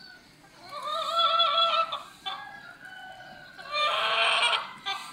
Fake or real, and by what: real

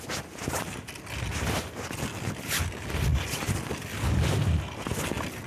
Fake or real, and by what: real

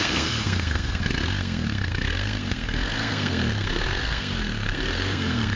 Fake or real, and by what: fake, codec, SNAC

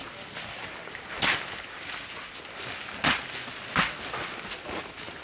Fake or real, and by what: real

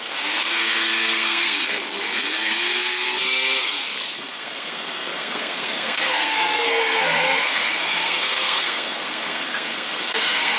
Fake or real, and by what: fake, codec, SNAC